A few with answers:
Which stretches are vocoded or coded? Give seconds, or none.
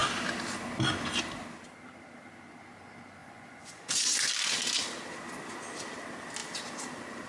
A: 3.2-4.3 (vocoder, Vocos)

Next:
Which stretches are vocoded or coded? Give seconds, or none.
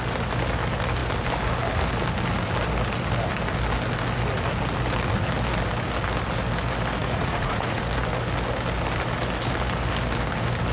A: 7.0-7.8 (vocoder, Vocos)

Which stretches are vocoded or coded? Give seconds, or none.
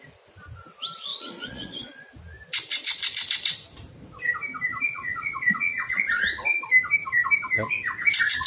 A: 1.1-2.1 (vocoder, Vocos); 4.9-6.0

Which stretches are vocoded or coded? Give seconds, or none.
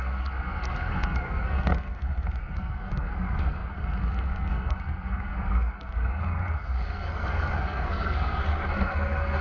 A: 0.0-9.4 (codec, SNAC)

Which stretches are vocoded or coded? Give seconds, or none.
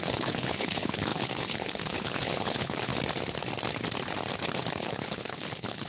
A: 0.0-2.9 (codec, HILCodec); 4.8-5.9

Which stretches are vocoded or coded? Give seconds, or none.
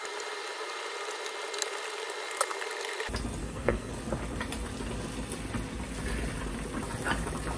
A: 3.4-3.9 (codec, SNAC)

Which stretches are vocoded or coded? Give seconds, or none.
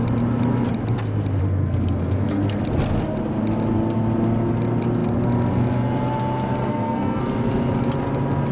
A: 1.4-2.6 (codec, SNAC); 6.6-7.2